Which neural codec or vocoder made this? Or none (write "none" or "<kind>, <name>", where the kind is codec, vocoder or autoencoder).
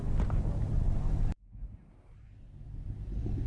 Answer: none